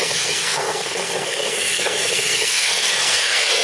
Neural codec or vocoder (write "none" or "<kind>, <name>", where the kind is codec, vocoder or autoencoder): codec, SNAC